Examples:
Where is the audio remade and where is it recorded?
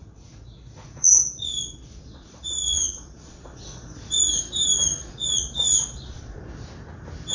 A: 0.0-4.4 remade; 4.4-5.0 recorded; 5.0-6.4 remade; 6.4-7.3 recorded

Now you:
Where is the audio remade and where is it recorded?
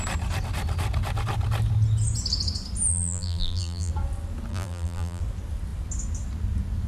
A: 0.0-2.9 recorded; 2.9-3.9 remade; 3.9-4.5 recorded; 4.5-5.2 remade; 5.2-6.9 recorded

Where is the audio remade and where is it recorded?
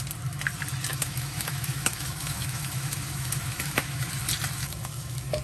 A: 0.0-0.9 recorded; 0.9-4.1 remade; 4.1-4.6 recorded; 4.6-5.4 remade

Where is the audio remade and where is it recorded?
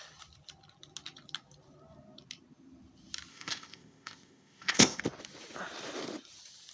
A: 0.0-3.3 recorded; 3.3-5.0 remade; 5.0-6.7 recorded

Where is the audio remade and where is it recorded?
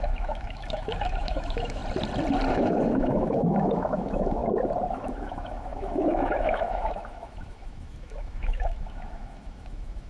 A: 0.0-1.8 remade; 1.8-2.5 recorded; 2.5-4.4 remade; 4.4-4.9 recorded; 4.9-10.1 remade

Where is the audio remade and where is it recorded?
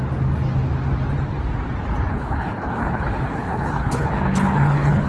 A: 0.0-2.1 recorded; 2.1-5.1 remade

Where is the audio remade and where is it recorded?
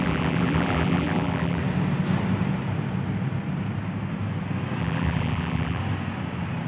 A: 0.0-1.6 remade; 1.6-4.8 recorded; 4.8-5.8 remade; 5.8-6.7 recorded